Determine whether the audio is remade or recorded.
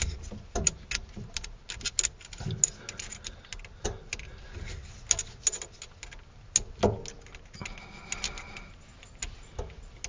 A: recorded